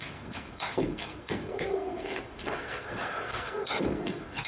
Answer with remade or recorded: remade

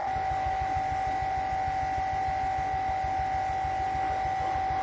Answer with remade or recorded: recorded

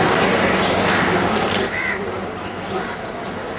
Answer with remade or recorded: recorded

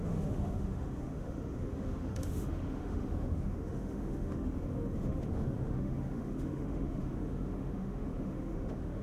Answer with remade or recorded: remade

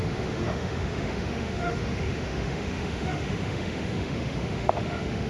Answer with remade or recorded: remade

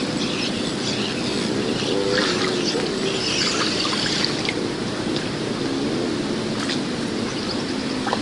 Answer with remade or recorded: recorded